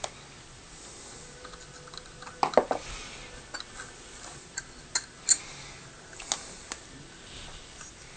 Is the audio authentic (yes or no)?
yes